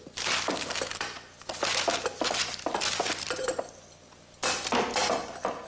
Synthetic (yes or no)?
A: no